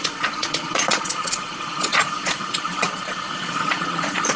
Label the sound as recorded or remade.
remade